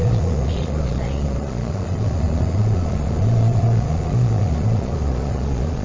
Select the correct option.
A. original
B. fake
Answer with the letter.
B